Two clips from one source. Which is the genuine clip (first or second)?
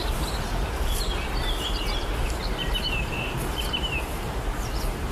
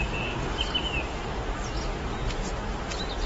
second